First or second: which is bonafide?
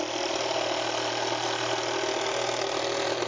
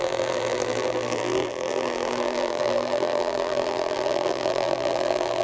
first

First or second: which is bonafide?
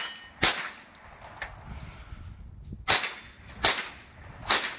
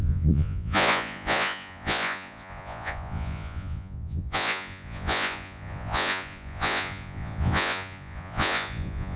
first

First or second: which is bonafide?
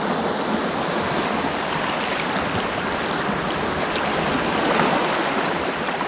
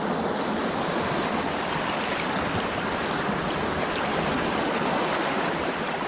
first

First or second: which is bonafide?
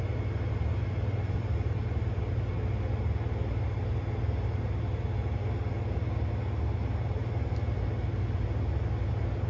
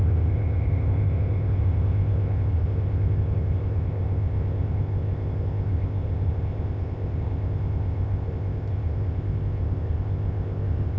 first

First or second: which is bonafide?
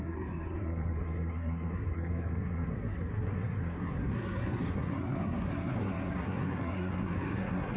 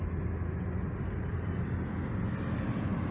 second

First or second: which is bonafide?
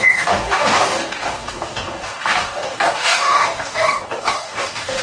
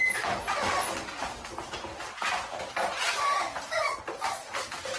second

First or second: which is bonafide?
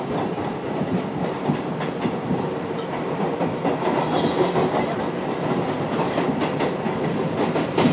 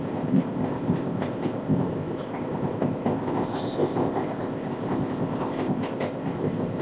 first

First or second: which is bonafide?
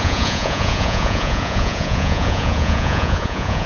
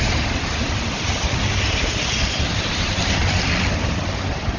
second